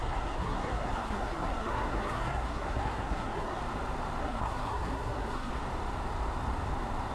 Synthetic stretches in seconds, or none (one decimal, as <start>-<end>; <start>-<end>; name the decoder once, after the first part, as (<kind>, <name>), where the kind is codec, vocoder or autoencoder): 0.0-3.6 (codec, SNAC); 4.2-5.5